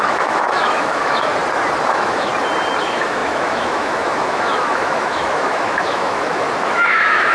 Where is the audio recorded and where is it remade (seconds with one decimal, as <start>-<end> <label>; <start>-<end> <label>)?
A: 0.0-1.3 remade; 1.3-1.9 recorded; 1.9-2.3 remade; 2.3-2.8 recorded; 2.8-7.3 remade

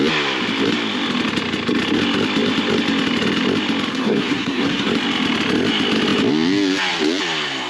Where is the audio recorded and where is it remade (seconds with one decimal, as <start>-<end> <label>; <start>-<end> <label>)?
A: 0.0-3.9 recorded; 3.9-4.9 remade; 4.9-7.7 recorded

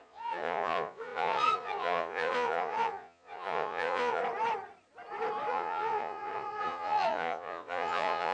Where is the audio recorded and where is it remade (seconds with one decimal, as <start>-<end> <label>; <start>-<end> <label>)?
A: 0.0-4.2 remade; 4.2-5.5 recorded; 5.5-8.3 remade

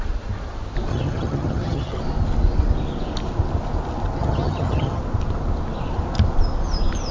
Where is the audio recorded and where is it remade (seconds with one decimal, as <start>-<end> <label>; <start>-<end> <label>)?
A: 0.0-0.9 recorded; 0.9-2.0 remade; 2.0-4.2 recorded; 4.2-5.0 remade; 5.0-7.1 recorded

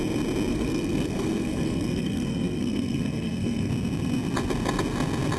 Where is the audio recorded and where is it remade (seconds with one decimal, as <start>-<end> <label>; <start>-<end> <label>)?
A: 0.0-0.5 recorded; 0.5-3.7 remade; 3.7-5.4 recorded

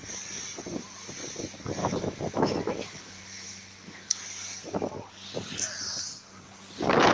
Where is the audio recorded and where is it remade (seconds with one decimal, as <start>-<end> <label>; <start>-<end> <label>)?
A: 0.0-1.8 recorded; 1.8-4.2 remade; 4.2-7.1 recorded

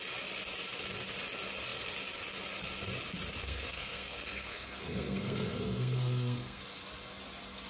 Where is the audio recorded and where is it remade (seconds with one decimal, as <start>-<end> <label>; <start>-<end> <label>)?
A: 0.0-3.4 recorded; 3.4-6.6 remade; 6.6-7.7 recorded